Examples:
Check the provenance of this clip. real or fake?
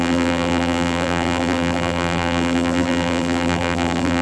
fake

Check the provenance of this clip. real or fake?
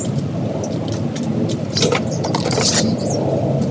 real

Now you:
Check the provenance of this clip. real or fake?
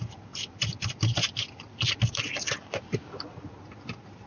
real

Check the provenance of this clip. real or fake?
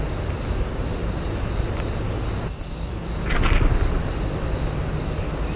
real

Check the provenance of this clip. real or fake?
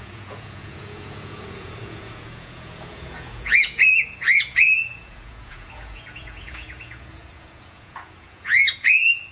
fake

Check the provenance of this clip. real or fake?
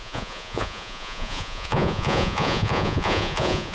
fake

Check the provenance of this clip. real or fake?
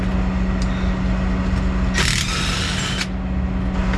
real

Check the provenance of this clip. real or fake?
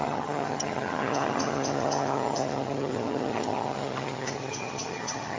fake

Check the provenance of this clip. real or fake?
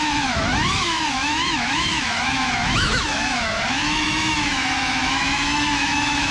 fake